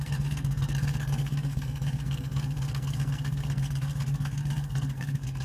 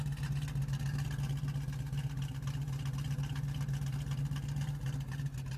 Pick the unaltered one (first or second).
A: second